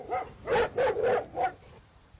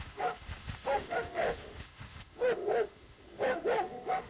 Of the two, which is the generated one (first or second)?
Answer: second